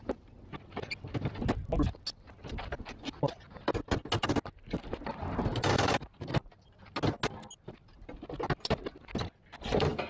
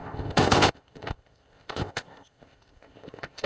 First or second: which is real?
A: first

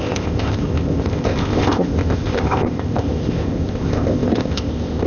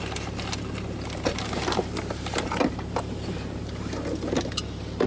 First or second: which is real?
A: second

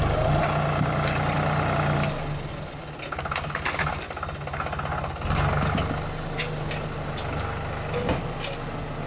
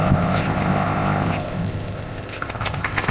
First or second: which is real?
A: first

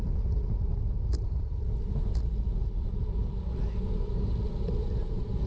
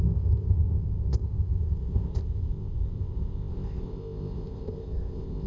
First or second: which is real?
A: first